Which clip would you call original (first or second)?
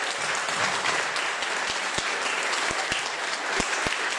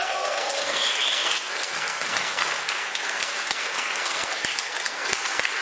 first